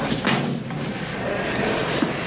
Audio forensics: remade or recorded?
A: recorded